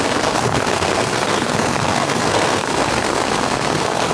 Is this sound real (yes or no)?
no